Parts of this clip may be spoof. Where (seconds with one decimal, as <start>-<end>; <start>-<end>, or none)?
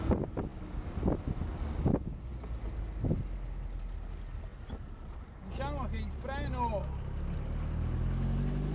4.5-5.4